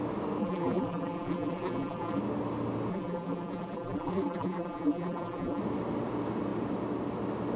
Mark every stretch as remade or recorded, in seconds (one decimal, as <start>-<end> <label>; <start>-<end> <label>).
0.0-0.4 recorded; 0.4-2.2 remade; 2.2-2.9 recorded; 2.9-5.6 remade; 5.6-7.6 recorded

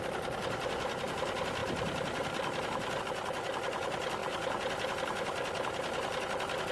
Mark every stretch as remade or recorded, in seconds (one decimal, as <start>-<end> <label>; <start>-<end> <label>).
0.0-6.7 recorded